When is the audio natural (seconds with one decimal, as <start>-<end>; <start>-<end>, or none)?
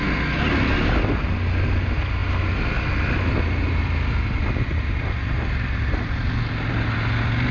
0.0-7.5